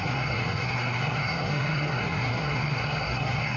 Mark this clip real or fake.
fake